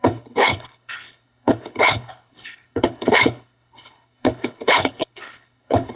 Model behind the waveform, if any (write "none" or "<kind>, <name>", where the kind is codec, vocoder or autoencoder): codec, HILCodec